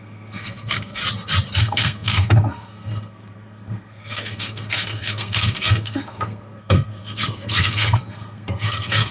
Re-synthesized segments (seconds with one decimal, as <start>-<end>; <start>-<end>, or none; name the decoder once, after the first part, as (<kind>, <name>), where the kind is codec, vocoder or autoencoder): 0.0-1.0 (codec, SNAC); 1.6-9.1